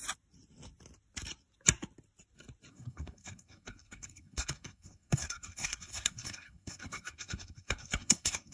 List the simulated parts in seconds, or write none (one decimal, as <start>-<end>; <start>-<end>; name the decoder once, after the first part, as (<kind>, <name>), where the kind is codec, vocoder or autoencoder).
2.7-8.5 (codec, SNAC)